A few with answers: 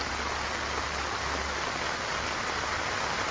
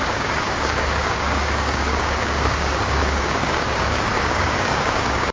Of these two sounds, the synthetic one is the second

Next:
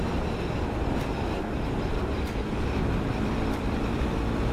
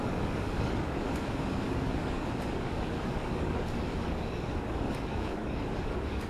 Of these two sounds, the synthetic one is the second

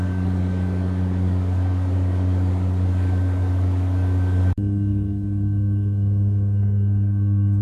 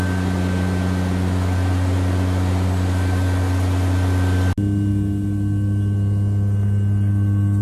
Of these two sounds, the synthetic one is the first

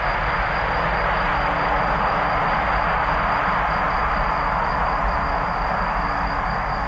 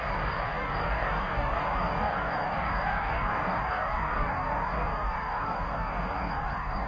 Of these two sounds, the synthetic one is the second